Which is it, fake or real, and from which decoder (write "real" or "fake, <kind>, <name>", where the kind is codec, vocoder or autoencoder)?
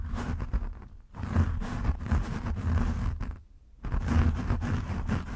real